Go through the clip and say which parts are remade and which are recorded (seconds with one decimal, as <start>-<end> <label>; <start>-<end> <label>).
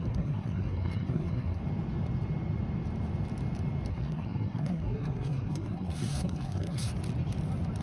0.0-1.6 remade; 1.6-3.9 recorded; 3.9-6.9 remade; 6.9-7.8 recorded